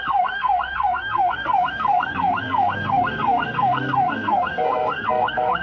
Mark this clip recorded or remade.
remade